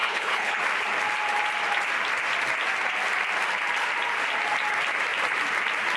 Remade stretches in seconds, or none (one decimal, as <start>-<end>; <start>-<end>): 0.0-0.6